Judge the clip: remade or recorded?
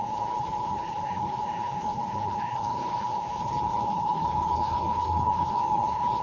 remade